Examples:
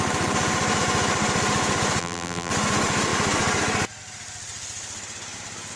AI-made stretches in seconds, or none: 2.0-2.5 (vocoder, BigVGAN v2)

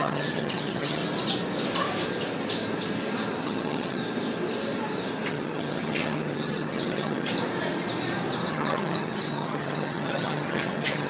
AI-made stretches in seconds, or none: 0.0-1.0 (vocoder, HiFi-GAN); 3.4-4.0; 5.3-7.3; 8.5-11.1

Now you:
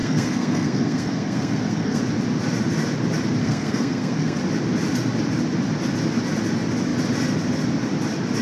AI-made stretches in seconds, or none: 0.0-2.0 (codec, SNAC); 3.4-4.4

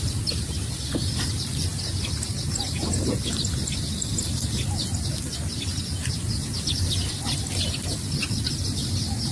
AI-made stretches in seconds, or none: none